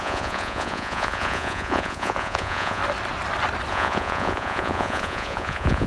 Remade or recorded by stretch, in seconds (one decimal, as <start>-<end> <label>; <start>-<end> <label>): 0.0-2.8 remade; 2.8-3.7 recorded; 3.7-5.9 remade